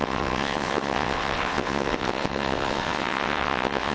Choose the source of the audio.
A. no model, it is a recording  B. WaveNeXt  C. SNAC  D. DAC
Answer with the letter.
B